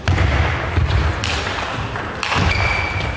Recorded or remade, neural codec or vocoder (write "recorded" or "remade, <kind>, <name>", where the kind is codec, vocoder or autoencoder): recorded